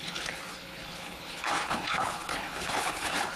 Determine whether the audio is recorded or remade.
remade